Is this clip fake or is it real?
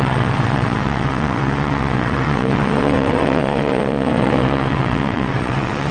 fake